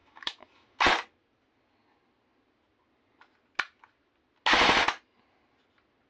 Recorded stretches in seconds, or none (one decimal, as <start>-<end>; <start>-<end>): 0.8-6.1